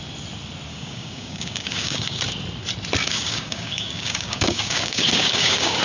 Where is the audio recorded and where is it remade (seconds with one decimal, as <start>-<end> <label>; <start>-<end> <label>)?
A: 0.0-0.7 recorded; 0.7-2.2 remade; 2.2-3.0 recorded; 3.0-5.8 remade